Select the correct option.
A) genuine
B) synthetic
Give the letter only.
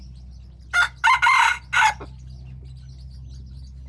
A